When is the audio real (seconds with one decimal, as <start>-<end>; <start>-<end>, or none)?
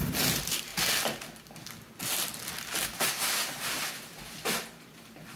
0.0-5.4